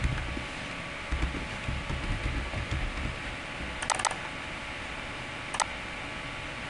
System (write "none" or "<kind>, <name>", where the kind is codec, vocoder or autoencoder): none